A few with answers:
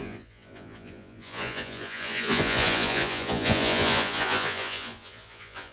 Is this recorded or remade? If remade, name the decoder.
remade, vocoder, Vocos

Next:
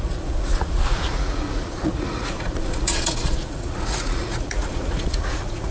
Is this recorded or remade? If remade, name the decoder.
remade, vocoder, Vocos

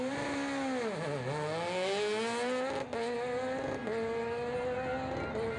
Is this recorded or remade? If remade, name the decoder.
recorded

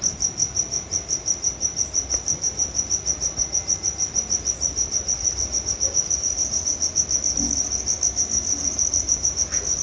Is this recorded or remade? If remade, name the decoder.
recorded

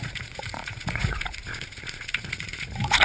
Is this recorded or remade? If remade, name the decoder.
remade, vocoder, Vocos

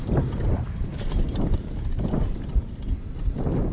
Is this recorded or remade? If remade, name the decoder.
recorded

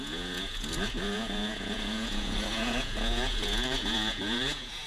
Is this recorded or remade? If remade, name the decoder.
remade, vocoder, Vocos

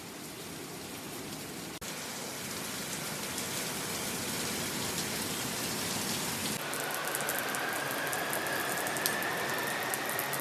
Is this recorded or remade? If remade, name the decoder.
recorded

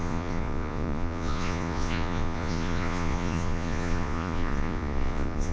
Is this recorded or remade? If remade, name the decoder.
remade, vocoder, Vocos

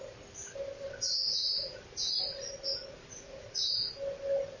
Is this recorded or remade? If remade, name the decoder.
recorded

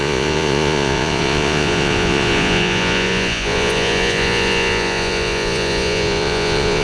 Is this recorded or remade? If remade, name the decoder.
remade, vocoder, Vocos